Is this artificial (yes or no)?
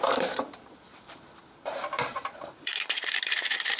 yes